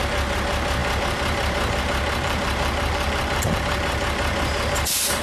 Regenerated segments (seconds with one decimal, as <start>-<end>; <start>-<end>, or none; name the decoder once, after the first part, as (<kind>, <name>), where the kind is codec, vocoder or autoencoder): 0.0-5.2 (vocoder, BigVGAN v2)